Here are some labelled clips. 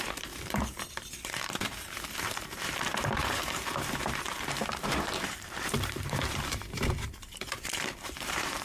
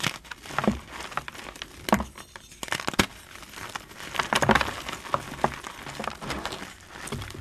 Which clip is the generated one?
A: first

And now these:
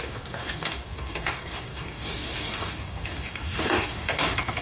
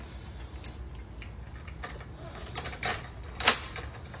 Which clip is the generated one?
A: first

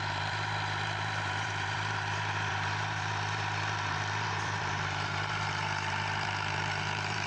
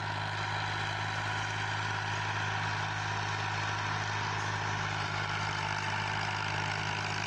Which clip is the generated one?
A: first